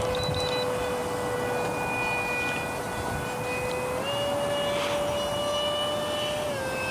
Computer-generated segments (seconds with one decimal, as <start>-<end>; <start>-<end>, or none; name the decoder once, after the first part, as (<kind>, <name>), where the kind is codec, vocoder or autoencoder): none

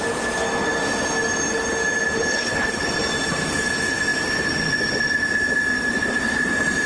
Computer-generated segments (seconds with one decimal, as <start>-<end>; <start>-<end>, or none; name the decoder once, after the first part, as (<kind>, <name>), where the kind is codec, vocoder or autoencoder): 2.3-2.9 (codec, HILCodec)

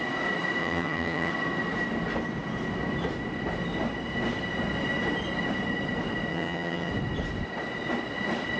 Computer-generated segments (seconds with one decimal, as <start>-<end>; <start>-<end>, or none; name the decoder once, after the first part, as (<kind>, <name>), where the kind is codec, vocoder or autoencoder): 0.6-1.3 (vocoder, HiFi-GAN); 6.3-6.9

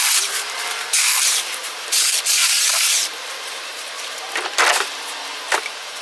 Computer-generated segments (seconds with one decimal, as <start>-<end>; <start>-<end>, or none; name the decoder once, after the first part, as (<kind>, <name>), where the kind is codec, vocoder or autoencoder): 0.0-3.7 (vocoder, BigVGAN v2)

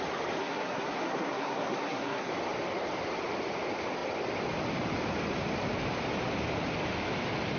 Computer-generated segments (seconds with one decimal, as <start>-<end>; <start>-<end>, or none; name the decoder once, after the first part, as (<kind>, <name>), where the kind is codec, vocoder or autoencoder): 0.4-2.3 (codec, SNAC)

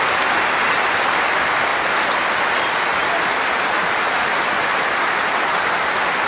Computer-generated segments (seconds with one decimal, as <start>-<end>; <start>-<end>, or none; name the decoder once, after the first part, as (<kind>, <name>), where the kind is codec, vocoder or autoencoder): 1.7-2.5 (vocoder, BigVGAN v2); 2.9-5.6